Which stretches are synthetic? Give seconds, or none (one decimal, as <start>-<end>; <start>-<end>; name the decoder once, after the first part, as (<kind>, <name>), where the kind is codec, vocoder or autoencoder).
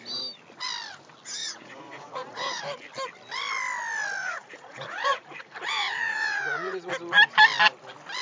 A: 1.4-2.6 (vocoder, Vocos); 4.2-6.9